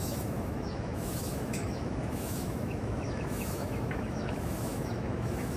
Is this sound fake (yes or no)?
yes